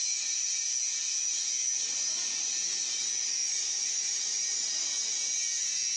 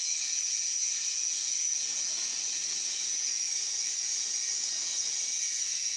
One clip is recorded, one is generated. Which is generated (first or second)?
second